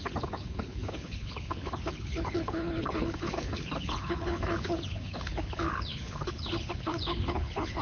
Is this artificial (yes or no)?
yes